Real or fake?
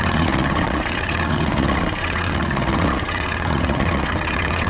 fake